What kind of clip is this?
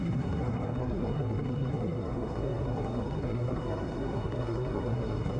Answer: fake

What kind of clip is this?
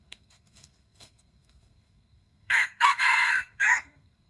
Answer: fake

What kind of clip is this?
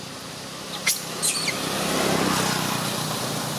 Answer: real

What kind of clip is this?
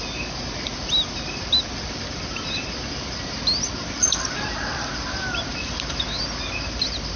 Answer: real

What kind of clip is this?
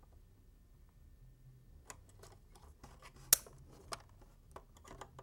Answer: real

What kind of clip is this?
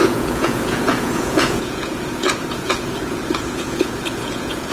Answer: fake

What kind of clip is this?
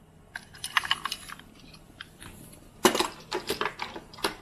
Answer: real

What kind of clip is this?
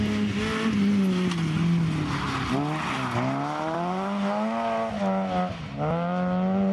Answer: real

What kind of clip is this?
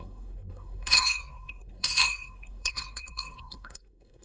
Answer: fake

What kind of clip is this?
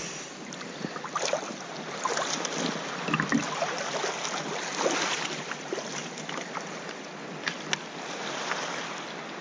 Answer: real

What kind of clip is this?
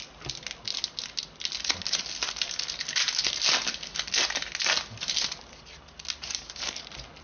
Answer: real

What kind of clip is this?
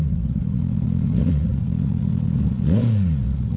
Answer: fake